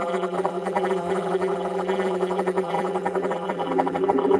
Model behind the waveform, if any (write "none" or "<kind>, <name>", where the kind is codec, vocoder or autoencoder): vocoder, BigVGAN v2